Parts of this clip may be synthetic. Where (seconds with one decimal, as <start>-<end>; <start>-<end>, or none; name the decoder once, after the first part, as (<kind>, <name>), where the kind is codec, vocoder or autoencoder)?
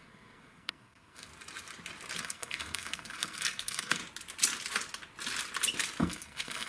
0.0-1.3 (codec, SNAC); 2.2-4.0; 6.0-6.7